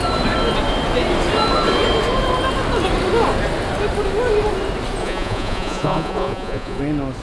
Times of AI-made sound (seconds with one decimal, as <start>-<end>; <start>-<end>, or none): 5.0-6.8